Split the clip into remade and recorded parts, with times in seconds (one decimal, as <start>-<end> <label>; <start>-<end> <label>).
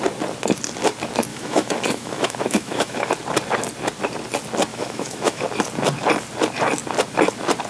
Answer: 0.0-1.3 recorded; 1.3-3.1 remade; 3.1-4.7 recorded; 4.7-5.4 remade; 5.4-7.7 recorded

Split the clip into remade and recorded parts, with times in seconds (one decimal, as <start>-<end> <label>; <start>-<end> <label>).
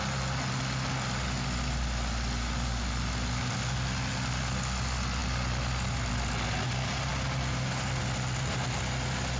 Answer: 0.0-9.4 recorded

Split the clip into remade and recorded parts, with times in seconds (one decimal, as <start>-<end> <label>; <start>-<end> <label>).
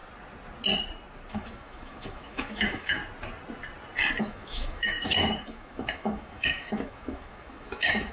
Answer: 0.0-1.3 recorded; 1.3-3.0 remade; 3.0-4.2 recorded; 4.2-8.1 remade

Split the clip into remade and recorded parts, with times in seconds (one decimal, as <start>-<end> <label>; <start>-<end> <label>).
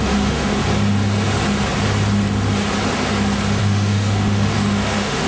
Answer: 0.0-0.6 remade; 0.6-3.6 recorded; 3.6-5.3 remade